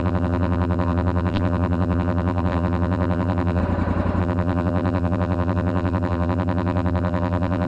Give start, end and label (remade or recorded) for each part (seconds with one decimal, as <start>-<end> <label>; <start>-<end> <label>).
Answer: 0.0-3.6 remade; 3.6-4.2 recorded; 4.2-7.7 remade